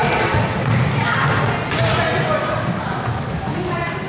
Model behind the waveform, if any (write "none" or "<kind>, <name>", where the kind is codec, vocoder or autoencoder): none